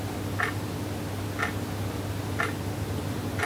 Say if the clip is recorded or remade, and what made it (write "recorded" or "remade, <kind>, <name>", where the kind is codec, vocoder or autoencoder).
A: recorded